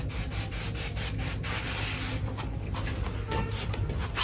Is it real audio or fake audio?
real